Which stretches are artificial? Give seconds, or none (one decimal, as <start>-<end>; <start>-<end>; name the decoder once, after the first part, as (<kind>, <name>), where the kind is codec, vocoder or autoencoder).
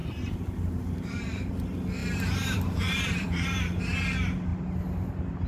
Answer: 0.0-1.5 (vocoder, BigVGAN v2); 2.0-3.8